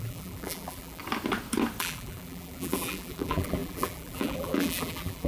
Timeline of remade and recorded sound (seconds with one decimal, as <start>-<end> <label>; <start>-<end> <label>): 0.0-1.0 remade; 1.0-1.8 recorded; 1.8-5.3 remade